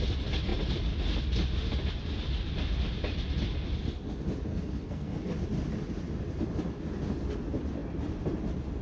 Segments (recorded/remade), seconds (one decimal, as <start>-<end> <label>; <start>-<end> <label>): 0.0-4.5 recorded; 4.5-5.2 remade; 5.2-8.8 recorded